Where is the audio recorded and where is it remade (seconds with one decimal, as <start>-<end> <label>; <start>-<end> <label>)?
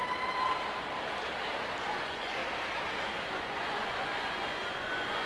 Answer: 0.0-1.8 recorded; 1.8-2.4 remade; 2.4-3.3 recorded; 3.3-5.3 remade